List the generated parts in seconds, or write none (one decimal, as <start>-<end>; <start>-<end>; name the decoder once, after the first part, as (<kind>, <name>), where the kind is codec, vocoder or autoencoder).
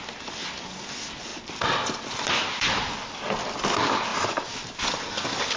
none